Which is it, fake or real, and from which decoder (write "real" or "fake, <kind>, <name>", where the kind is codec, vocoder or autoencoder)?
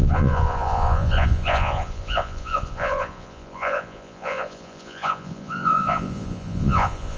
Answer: fake, vocoder, Vocos